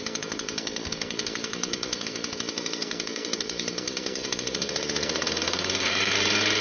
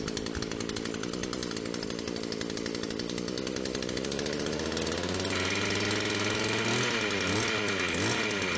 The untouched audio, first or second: second